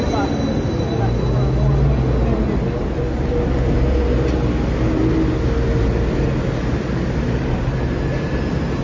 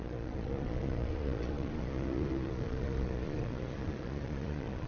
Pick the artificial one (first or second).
second